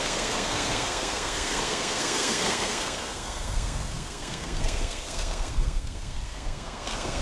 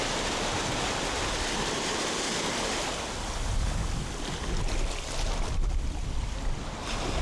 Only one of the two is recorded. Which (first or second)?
second